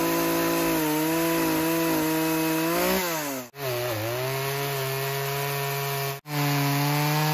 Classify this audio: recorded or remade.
recorded